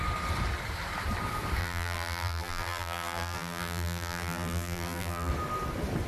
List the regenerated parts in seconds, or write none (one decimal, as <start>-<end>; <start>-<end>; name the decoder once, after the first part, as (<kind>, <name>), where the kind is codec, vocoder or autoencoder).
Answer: 1.6-5.3 (vocoder, BigVGAN v2)

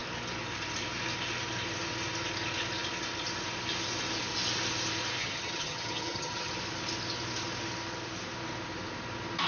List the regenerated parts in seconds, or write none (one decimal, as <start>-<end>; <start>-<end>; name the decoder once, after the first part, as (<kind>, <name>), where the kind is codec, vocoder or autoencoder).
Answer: 5.2-6.5 (vocoder, HiFi-GAN)

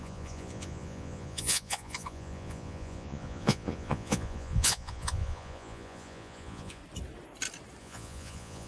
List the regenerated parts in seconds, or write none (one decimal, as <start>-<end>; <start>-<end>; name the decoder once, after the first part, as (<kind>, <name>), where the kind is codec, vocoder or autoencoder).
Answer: 0.0-6.8 (vocoder, Vocos); 7.8-8.7

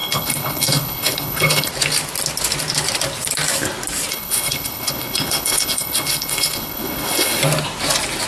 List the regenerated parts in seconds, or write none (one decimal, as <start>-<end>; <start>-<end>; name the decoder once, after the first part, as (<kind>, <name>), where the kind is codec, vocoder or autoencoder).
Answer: 0.0-1.7 (codec, HILCodec); 4.1-7.4